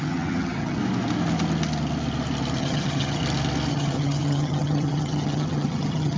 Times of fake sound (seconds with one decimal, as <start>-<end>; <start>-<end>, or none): 0.0-0.8; 2.6-3.2; 3.7-6.2